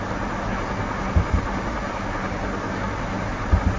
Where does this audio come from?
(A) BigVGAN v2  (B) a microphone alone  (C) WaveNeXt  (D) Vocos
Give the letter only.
B